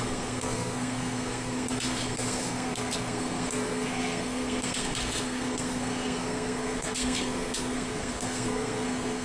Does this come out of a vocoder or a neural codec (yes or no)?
yes